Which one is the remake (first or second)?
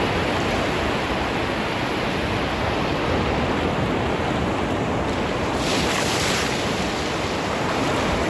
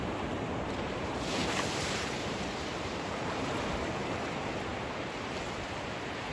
second